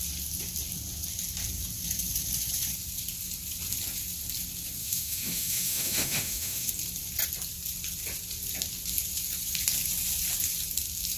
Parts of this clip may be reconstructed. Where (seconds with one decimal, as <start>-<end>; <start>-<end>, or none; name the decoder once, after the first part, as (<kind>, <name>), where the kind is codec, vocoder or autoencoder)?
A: 4.8-6.7 (autoencoder, DAC-VAE)